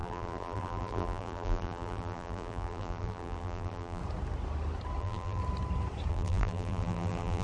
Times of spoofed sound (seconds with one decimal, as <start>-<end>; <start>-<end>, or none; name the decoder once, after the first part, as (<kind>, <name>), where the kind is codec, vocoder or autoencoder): 0.0-4.0 (vocoder, BigVGAN v2); 5.0-5.4; 6.1-7.4